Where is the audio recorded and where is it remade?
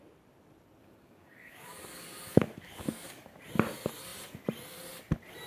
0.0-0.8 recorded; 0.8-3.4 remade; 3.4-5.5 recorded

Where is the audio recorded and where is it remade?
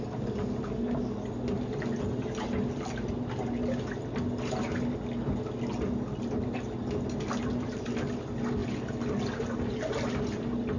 0.0-10.8 recorded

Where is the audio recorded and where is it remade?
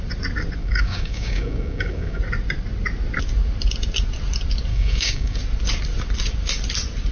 0.0-0.6 recorded; 0.6-2.2 remade; 2.2-4.7 recorded; 4.7-5.4 remade; 5.4-7.1 recorded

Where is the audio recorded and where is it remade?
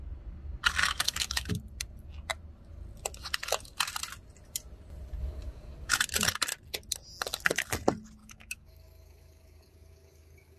0.0-0.8 recorded; 0.8-1.5 remade; 1.5-5.2 recorded; 5.2-6.0 remade; 6.0-8.2 recorded; 8.2-10.6 remade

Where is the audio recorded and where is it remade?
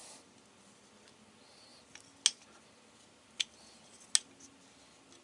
0.0-5.2 recorded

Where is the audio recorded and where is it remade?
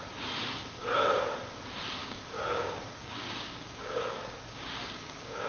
0.0-2.0 recorded; 2.0-5.5 remade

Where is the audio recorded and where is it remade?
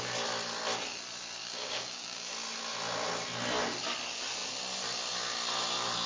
0.0-1.4 recorded; 1.4-2.3 remade; 2.3-6.1 recorded